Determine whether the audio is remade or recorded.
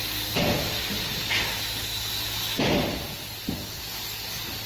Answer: recorded